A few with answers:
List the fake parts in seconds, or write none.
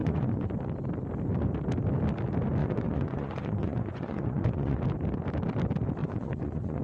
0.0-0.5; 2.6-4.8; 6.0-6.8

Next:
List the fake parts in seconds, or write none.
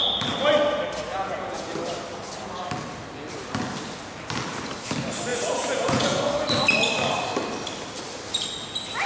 1.1-1.7; 5.3-6.2